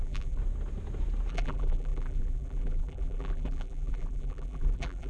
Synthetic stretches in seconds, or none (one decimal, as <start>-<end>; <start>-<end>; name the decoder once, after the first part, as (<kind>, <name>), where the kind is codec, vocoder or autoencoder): 0.0-0.4 (vocoder, BigVGAN v2); 1.3-5.1